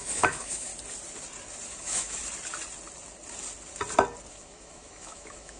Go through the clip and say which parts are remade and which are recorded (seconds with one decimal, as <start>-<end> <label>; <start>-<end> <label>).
0.0-0.7 remade; 0.7-1.7 recorded; 1.7-2.2 remade; 2.2-4.3 recorded; 4.3-5.6 remade